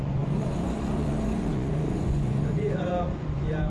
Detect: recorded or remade remade